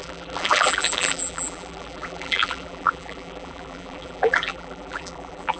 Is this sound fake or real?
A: fake